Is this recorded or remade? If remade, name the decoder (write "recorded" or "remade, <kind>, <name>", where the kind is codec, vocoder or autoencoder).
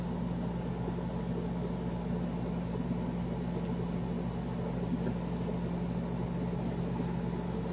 recorded